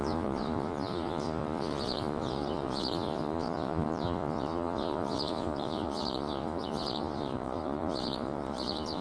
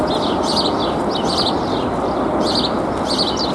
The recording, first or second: second